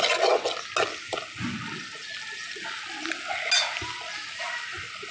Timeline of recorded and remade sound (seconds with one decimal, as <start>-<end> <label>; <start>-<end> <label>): 0.0-5.1 recorded